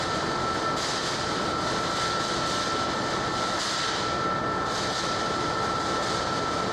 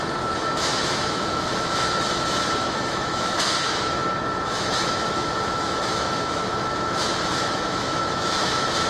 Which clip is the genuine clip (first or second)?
first